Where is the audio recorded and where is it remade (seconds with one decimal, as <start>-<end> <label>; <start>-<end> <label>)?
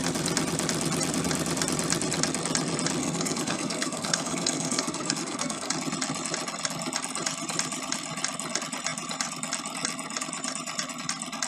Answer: 0.0-3.0 recorded; 3.0-5.7 remade; 5.7-11.5 recorded